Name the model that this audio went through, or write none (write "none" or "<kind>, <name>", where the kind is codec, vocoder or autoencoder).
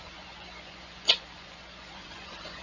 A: vocoder, Vocos